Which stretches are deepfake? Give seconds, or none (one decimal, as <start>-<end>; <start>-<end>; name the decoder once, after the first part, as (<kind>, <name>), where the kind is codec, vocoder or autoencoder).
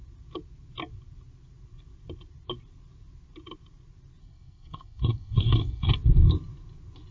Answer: 4.2-5.9 (codec, SNAC)